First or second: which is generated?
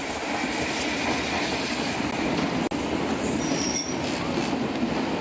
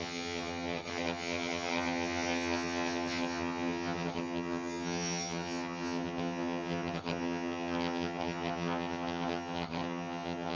second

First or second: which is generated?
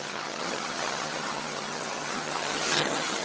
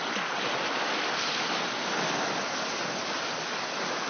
first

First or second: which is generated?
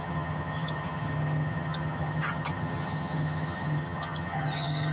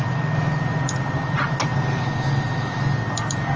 first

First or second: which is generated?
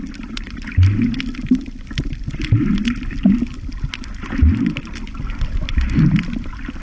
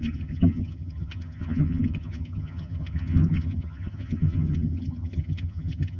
second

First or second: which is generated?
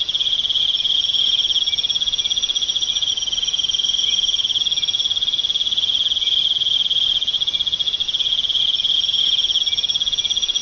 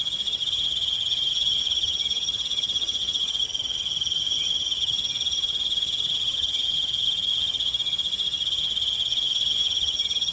second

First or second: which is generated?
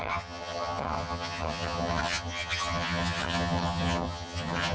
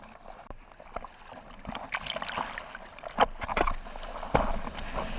first